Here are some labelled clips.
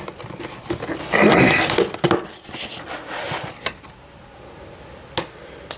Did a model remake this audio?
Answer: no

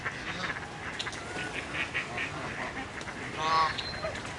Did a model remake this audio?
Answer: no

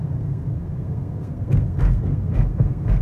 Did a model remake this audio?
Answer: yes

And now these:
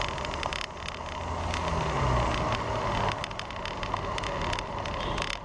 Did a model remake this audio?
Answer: no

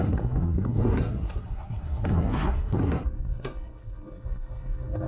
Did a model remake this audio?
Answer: yes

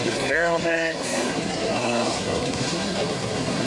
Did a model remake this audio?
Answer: yes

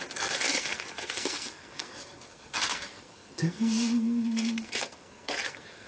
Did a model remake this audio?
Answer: yes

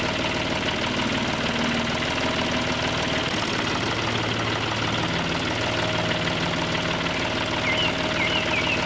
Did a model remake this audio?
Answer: no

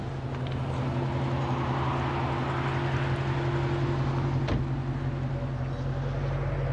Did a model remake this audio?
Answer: no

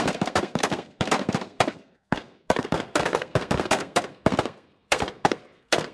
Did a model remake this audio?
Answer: yes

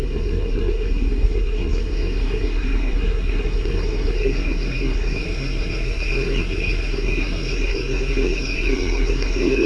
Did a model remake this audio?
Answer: yes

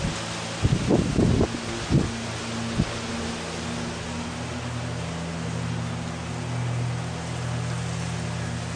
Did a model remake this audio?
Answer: no